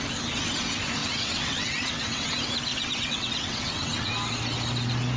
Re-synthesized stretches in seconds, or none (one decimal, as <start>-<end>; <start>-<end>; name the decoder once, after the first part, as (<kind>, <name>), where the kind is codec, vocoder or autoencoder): 1.0-2.3 (vocoder, WaveNeXt); 2.7-4.1